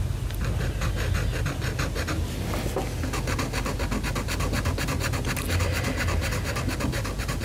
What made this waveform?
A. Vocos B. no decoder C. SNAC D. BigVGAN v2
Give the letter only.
B